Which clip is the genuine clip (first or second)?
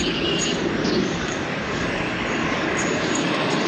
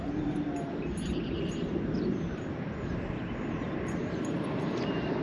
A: second